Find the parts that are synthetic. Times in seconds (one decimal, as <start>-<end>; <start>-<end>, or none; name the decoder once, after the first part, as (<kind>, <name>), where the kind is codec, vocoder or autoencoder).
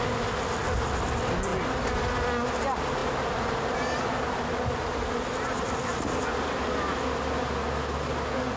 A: none